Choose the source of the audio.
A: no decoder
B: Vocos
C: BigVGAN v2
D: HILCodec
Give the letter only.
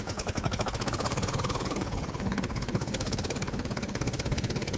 D